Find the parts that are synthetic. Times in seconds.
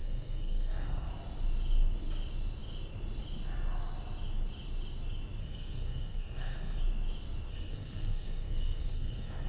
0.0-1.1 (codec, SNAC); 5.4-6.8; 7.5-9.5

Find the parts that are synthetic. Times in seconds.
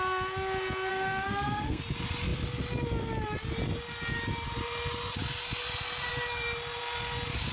0.9-1.8 (codec, SNAC)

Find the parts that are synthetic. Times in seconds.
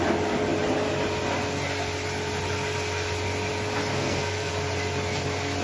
3.9-4.5 (codec, SNAC)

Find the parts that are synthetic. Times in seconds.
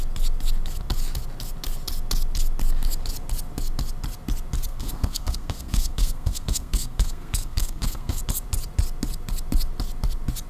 4.7-8.2 (codec, SNAC)